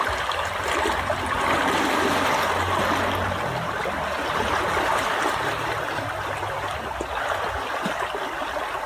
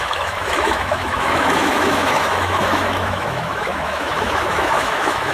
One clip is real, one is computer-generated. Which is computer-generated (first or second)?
second